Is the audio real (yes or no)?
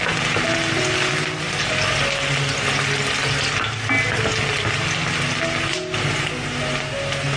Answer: yes